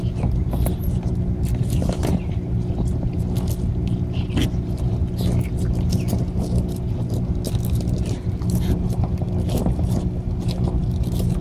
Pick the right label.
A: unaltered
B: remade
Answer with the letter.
A